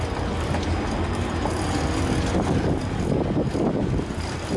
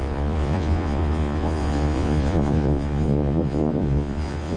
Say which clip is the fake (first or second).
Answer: second